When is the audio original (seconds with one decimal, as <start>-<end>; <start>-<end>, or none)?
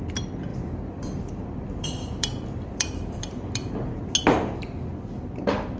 0.0-0.5; 4.0-5.8